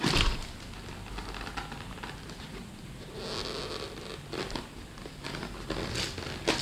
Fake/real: real